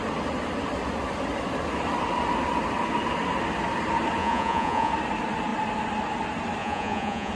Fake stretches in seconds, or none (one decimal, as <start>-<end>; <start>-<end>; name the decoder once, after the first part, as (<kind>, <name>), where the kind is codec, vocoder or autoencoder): 4.2-4.9 (vocoder, Vocos); 6.6-7.3